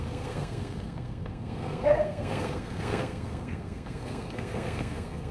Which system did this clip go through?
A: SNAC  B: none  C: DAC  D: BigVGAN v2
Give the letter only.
A